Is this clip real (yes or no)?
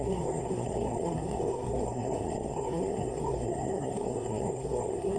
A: no